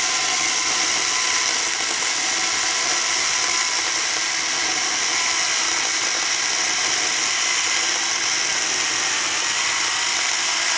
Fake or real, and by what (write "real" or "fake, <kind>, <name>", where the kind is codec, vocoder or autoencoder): real